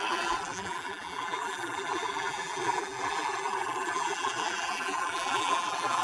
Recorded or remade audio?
remade